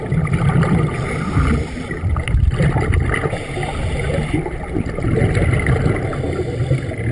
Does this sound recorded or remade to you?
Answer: recorded